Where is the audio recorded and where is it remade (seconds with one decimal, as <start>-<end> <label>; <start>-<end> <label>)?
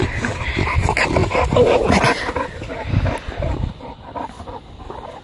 0.0-5.2 recorded